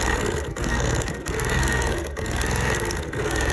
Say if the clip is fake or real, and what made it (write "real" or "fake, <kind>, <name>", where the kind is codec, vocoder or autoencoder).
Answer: fake, codec, SNAC